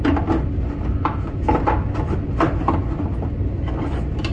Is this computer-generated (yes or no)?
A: no